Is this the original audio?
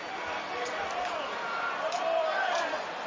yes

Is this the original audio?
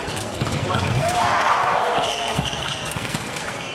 no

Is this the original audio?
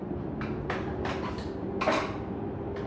yes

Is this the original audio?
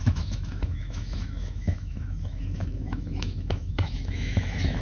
no